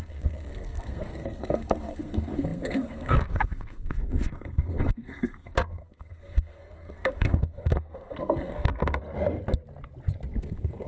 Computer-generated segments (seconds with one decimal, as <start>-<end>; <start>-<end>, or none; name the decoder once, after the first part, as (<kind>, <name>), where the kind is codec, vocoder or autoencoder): 0.0-9.0 (codec, SNAC); 10.4-10.9